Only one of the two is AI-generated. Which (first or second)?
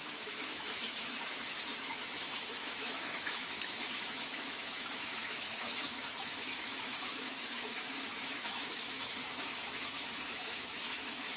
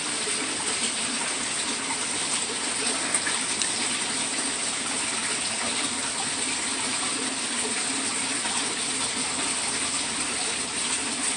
first